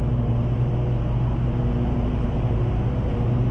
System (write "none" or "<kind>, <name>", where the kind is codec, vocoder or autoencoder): vocoder, BigVGAN v2